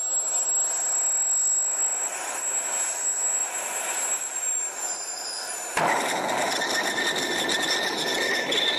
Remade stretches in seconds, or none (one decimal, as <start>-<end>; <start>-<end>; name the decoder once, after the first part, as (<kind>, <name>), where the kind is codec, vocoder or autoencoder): 3.4-6.0 (vocoder, BigVGAN v2)